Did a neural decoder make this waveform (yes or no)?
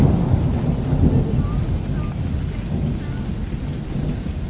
no